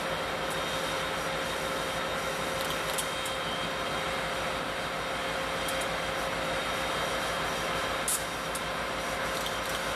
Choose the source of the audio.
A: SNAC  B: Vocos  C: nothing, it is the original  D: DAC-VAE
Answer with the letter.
C